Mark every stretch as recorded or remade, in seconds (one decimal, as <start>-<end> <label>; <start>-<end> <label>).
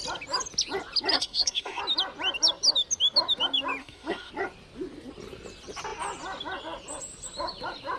0.0-1.1 recorded; 1.1-1.8 remade; 1.8-3.8 recorded; 3.8-4.3 remade; 4.3-8.0 recorded